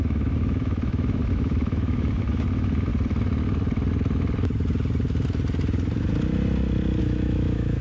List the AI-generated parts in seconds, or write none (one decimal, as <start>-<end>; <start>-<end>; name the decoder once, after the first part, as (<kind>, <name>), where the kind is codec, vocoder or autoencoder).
0.0-2.9 (autoencoder, DAC-VAE); 7.0-7.8